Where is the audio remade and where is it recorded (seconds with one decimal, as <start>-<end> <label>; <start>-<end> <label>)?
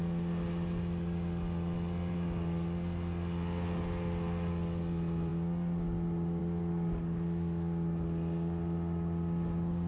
0.0-9.9 recorded